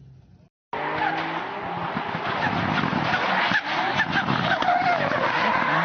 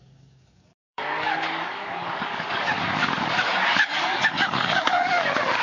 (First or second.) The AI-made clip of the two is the second